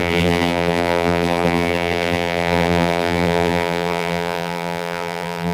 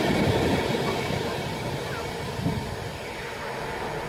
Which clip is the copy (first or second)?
first